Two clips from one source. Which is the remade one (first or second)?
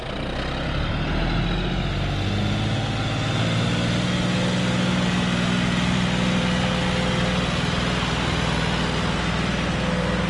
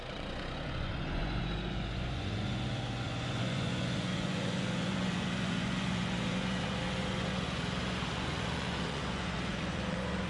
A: second